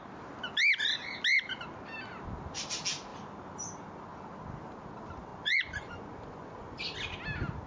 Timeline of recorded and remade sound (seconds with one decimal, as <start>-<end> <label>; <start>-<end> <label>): 0.0-5.3 recorded; 5.3-6.8 remade; 6.8-7.7 recorded